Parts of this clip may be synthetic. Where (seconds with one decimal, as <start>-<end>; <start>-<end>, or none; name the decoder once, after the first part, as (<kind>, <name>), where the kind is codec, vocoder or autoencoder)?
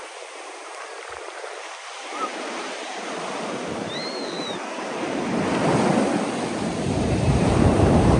0.0-5.2 (vocoder, BigVGAN v2); 6.5-8.2